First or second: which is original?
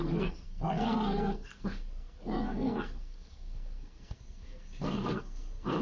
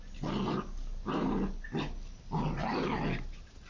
second